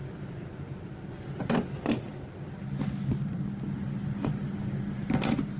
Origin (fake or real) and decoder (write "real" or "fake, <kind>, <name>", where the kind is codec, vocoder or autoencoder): real